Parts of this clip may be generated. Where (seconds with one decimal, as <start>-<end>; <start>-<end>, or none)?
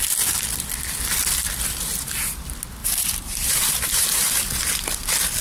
2.8-4.3